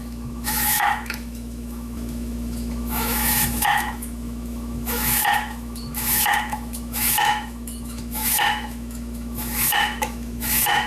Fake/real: fake